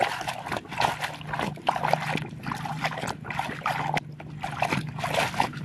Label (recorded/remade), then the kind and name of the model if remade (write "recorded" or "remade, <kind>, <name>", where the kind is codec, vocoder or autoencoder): recorded